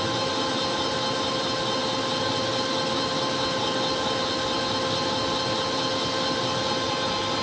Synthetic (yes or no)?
no